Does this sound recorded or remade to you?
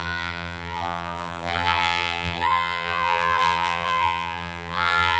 remade